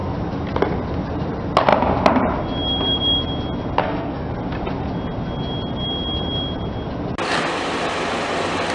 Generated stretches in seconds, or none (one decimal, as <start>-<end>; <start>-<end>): 3.8-4.3